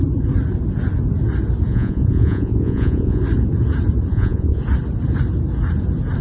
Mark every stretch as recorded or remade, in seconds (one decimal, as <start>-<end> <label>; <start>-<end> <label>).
0.0-1.7 recorded; 1.7-3.2 remade; 3.2-4.1 recorded; 4.1-4.6 remade; 4.6-6.2 recorded